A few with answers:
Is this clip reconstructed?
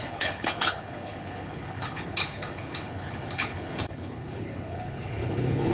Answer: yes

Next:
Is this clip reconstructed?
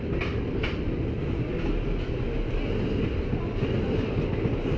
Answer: no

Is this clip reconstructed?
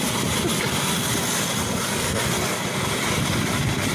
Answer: no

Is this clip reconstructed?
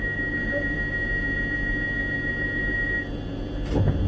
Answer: no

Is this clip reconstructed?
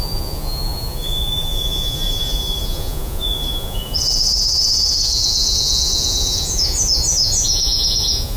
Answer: yes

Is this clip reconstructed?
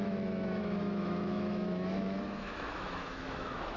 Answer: yes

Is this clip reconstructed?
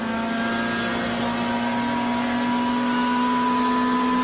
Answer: no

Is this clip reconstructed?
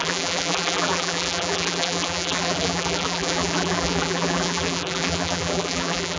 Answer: yes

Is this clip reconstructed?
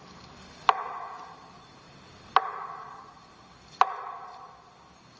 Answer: no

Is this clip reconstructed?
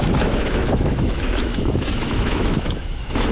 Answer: yes